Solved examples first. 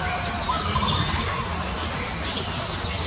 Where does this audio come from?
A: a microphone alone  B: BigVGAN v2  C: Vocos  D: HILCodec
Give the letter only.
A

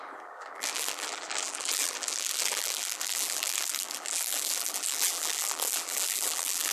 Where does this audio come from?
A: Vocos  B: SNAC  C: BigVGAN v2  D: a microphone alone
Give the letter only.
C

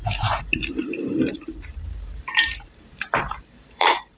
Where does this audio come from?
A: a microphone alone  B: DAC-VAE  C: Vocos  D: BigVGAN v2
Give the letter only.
D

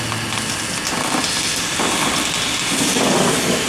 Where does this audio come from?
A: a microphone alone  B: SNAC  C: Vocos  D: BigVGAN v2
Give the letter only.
A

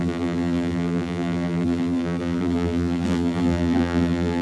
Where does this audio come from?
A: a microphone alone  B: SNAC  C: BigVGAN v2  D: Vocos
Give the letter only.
C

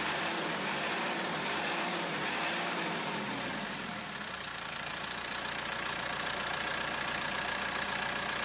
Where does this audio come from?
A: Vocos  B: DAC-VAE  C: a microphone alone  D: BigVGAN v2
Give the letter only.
D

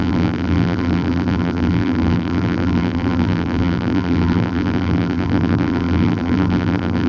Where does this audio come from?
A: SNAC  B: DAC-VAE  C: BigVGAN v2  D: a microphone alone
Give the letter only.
C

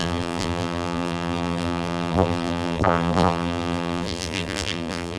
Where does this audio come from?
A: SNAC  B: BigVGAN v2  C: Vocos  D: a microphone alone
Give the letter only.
B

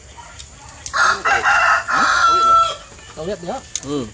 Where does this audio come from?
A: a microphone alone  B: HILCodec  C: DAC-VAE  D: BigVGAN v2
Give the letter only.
A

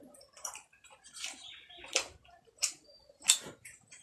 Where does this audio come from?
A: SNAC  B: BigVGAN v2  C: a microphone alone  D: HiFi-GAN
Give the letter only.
B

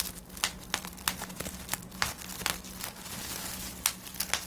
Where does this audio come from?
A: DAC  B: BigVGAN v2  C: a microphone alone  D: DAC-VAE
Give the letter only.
C